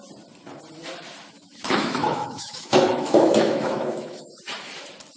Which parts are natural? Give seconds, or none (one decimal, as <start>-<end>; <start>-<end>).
0.0-1.2; 4.3-5.2